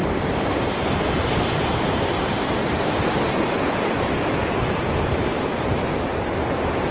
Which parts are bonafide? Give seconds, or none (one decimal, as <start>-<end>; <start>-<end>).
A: 2.6-5.8